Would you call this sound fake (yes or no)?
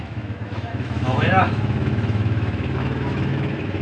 yes